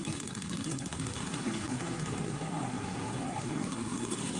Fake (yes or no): yes